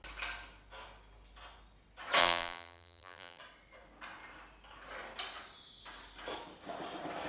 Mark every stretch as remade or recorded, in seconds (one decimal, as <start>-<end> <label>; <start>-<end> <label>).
0.0-2.2 recorded; 2.2-3.4 remade; 3.4-7.3 recorded